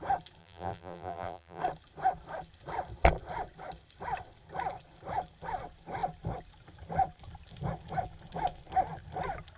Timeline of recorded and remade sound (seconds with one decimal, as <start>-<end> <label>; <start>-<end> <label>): 0.0-0.4 recorded; 0.4-1.6 remade; 1.6-9.6 recorded